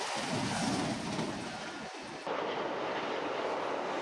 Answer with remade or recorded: recorded